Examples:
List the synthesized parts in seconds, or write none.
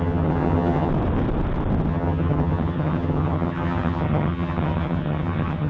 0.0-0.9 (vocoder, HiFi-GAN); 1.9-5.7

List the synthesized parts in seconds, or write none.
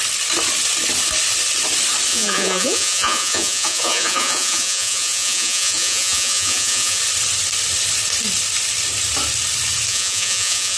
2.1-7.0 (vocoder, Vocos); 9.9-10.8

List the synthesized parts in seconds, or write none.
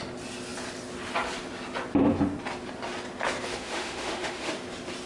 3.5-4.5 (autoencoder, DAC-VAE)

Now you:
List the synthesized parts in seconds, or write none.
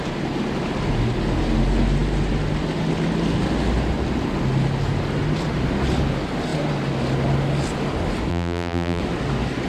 8.3-9.0 (vocoder, BigVGAN v2)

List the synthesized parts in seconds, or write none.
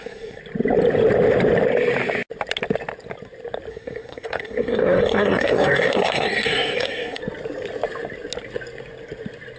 0.0-0.4 (codec, SNAC); 3.7-7.2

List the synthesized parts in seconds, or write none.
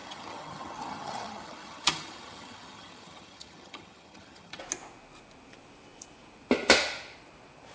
0.0-4.6 (vocoder, HiFi-GAN)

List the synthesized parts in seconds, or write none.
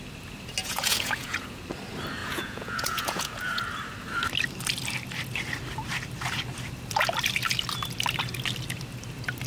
0.6-1.6 (vocoder, Vocos); 2.2-3.6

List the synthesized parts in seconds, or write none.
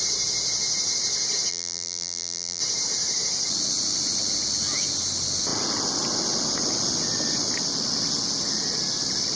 1.5-2.6 (vocoder, BigVGAN v2)